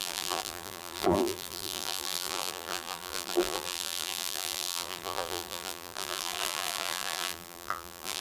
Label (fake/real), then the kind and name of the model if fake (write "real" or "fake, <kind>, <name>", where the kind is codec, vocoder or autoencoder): fake, vocoder, BigVGAN v2